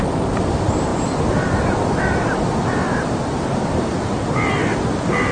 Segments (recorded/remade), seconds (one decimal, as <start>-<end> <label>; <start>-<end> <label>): 0.0-5.3 recorded